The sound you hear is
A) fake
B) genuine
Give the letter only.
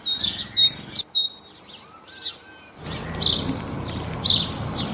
B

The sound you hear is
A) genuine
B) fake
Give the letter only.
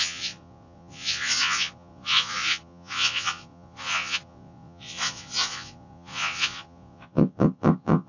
B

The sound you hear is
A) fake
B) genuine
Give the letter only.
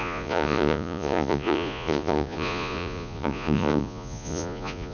A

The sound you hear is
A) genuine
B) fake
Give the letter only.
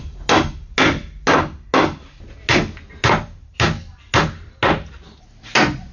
A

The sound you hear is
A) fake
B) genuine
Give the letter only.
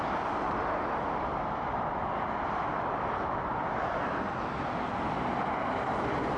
B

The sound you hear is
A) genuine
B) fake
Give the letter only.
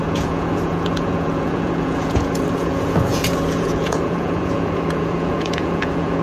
B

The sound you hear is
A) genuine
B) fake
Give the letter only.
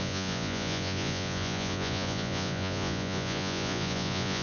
B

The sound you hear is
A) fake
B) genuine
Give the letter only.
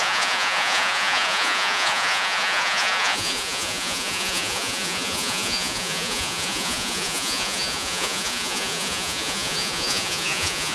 A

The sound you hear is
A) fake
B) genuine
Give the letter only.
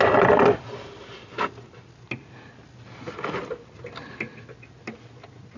B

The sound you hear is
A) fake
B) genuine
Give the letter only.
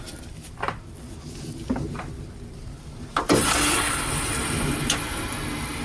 B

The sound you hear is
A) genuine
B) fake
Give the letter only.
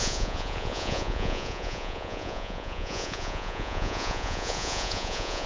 B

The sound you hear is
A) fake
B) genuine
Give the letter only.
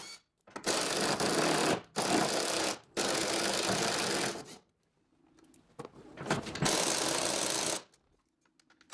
B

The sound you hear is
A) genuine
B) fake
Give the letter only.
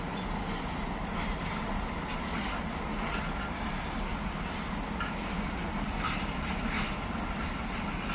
A